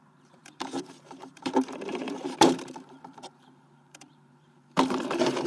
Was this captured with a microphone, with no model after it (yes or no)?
no